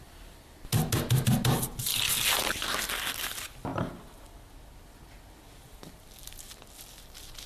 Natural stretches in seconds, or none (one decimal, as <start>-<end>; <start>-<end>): 0.0-7.5